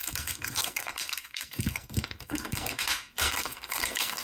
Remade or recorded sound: remade